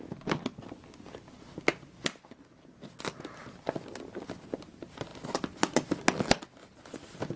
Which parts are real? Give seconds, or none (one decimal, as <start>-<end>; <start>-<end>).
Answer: 0.0-7.4